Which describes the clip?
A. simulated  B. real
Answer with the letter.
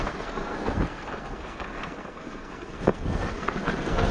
A